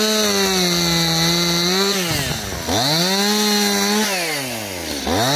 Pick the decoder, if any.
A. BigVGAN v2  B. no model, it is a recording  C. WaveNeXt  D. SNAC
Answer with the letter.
B